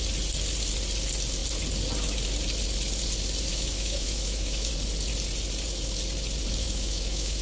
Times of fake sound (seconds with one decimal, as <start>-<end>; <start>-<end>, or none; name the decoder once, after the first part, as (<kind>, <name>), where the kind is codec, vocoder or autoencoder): 3.5-4.7 (autoencoder, DAC-VAE); 6.6-7.4